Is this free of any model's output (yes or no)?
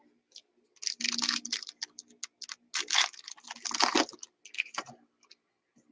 yes